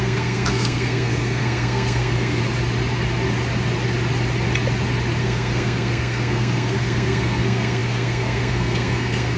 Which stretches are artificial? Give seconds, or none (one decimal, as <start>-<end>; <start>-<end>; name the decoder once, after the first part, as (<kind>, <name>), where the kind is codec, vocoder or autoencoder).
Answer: 0.0-2.4 (codec, SNAC); 5.2-9.4